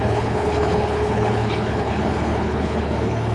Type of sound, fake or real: fake